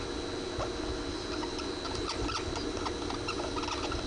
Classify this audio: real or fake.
real